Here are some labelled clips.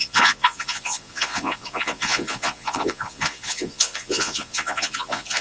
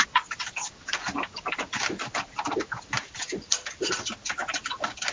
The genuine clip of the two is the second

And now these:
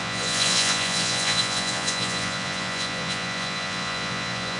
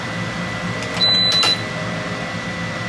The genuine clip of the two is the second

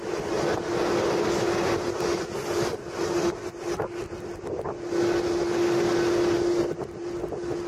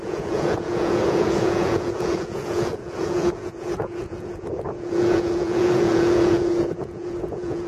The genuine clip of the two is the first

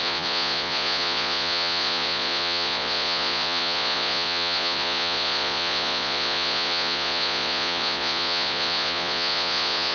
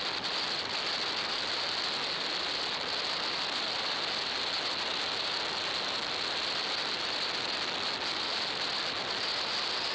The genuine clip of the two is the second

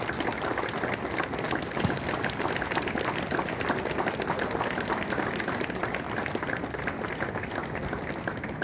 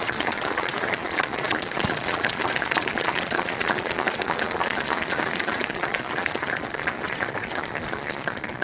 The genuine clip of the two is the first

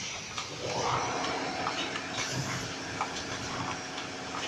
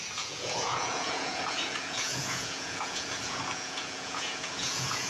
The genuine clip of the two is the first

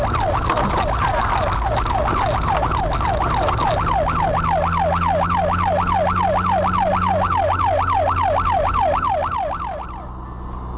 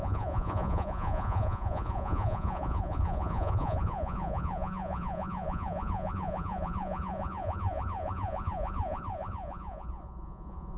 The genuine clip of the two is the first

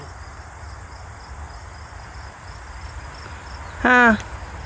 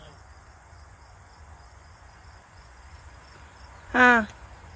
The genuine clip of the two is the first